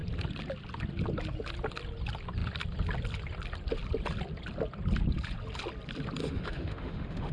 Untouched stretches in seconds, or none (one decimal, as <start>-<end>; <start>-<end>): 0.0-6.2